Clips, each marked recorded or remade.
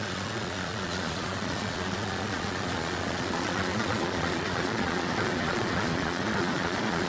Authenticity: remade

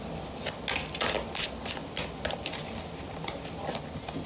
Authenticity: recorded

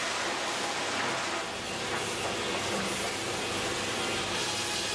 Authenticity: recorded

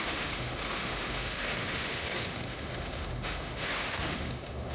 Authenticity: remade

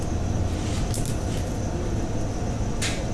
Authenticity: recorded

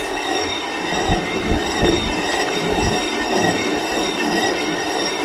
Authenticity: recorded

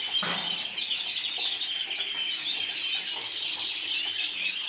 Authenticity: recorded